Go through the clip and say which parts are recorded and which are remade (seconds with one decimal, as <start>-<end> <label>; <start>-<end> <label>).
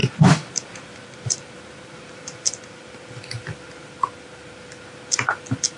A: 0.0-2.8 remade; 2.8-5.8 recorded